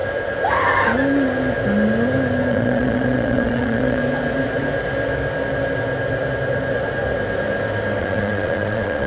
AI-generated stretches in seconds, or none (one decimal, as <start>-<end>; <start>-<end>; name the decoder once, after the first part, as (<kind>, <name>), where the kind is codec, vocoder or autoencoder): 2.5-4.0 (vocoder, Vocos); 8.0-9.1